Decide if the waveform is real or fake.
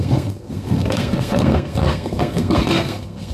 fake